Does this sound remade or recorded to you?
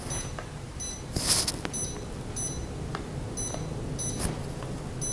recorded